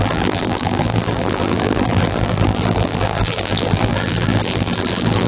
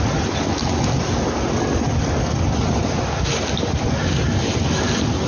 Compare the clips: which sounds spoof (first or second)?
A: first